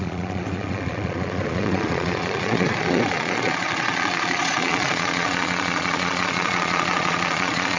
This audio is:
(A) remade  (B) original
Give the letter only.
A